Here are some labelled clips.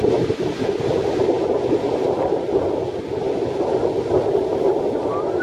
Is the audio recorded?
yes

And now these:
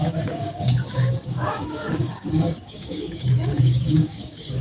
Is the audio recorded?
no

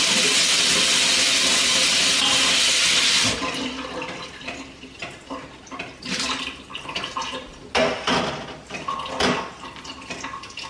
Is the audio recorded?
yes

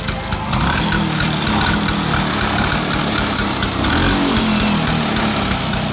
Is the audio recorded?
yes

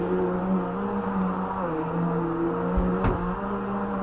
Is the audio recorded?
yes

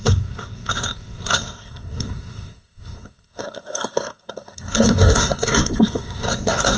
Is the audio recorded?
no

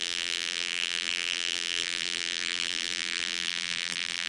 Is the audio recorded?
no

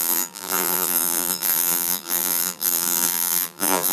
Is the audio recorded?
no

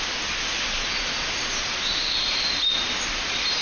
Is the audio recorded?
yes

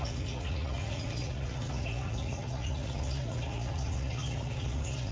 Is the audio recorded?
no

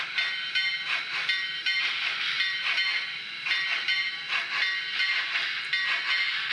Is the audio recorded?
yes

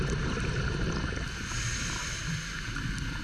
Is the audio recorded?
yes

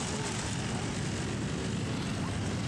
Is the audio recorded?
yes